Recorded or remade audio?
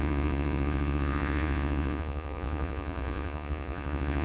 remade